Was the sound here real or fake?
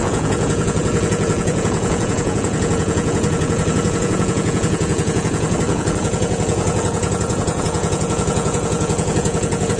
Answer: fake